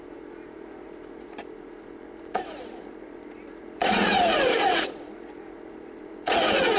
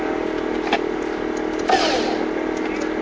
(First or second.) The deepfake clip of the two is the first